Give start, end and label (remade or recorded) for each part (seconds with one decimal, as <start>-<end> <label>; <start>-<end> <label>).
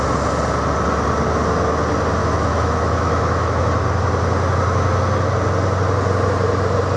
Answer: 0.0-2.2 recorded; 2.2-3.6 remade; 3.6-7.0 recorded